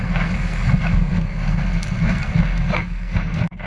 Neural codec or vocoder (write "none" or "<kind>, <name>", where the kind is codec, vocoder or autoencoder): codec, SNAC